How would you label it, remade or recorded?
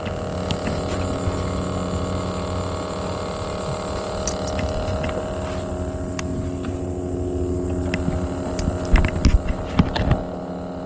recorded